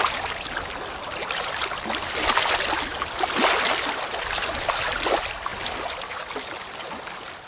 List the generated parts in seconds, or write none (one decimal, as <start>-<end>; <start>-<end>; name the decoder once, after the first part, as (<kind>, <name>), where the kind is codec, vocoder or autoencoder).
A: none